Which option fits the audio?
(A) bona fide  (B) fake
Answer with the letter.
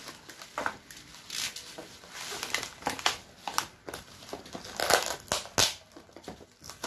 A